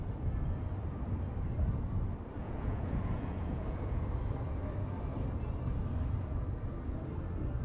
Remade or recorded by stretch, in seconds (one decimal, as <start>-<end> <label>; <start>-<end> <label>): 0.0-2.4 recorded; 2.4-4.0 remade; 4.0-7.6 recorded